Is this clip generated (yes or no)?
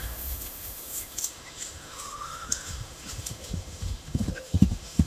yes